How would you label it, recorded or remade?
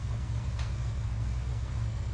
remade